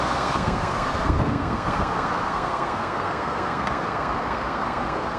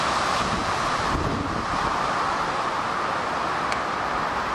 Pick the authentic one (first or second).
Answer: second